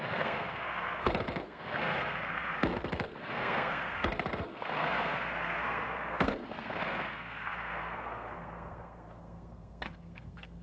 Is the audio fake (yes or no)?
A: yes